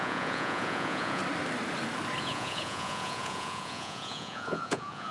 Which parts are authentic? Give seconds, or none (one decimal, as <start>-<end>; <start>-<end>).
1.2-2.2